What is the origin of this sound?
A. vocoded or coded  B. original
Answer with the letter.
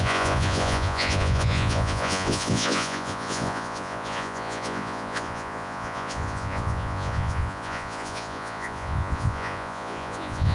A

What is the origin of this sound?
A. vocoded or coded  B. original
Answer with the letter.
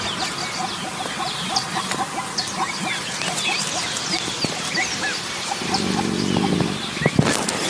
B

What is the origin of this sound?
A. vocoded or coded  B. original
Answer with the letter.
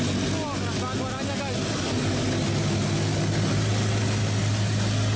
B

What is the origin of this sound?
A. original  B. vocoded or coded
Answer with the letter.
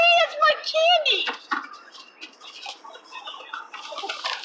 A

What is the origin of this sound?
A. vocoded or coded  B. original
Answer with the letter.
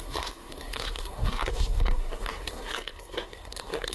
A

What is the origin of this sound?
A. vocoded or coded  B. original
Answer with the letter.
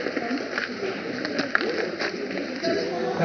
B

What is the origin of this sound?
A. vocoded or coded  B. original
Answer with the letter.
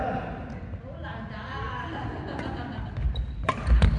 B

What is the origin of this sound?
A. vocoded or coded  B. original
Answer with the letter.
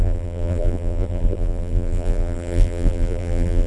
A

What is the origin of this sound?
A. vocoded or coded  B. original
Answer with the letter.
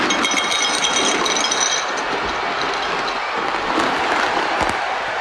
B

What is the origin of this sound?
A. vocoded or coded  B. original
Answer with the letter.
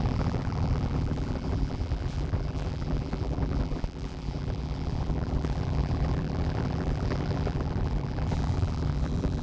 A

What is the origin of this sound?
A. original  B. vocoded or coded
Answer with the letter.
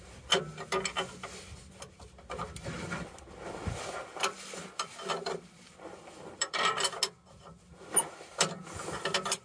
A